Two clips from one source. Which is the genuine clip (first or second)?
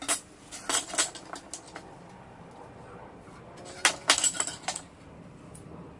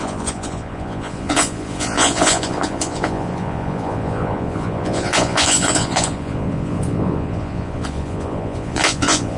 first